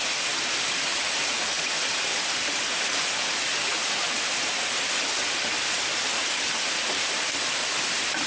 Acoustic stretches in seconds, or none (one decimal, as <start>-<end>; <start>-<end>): 0.0-8.3